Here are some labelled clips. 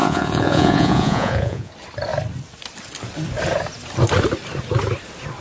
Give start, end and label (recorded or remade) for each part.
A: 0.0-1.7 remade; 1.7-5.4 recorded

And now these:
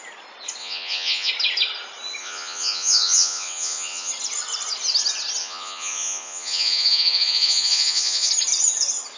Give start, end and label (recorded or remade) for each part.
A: 0.0-0.6 recorded; 0.6-1.3 remade; 1.3-2.2 recorded; 2.2-4.1 remade; 4.1-5.4 recorded; 5.4-8.3 remade; 8.3-9.2 recorded